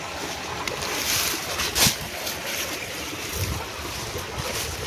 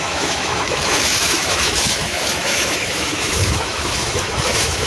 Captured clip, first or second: first